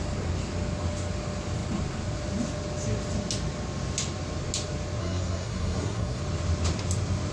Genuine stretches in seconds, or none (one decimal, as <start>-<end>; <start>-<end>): 0.0-5.0; 6.2-7.3